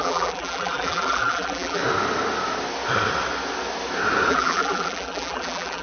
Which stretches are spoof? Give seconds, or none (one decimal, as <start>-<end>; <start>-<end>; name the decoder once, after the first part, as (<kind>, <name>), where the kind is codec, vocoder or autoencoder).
0.0-1.8 (vocoder, BigVGAN v2); 4.3-5.8